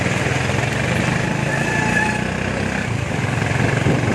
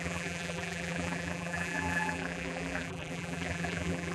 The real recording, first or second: first